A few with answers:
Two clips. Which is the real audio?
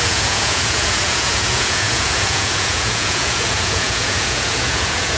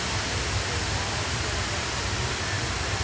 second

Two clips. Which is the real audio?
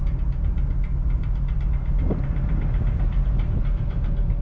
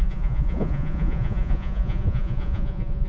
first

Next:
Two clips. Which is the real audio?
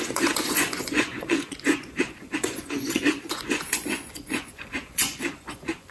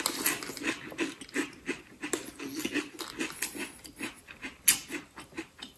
second